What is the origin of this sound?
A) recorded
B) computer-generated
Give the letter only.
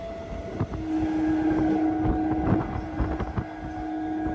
A